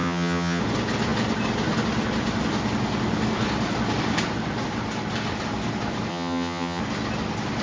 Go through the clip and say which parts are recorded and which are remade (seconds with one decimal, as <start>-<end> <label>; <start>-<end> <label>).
0.0-0.6 remade; 0.6-6.1 recorded; 6.1-6.8 remade; 6.8-7.6 recorded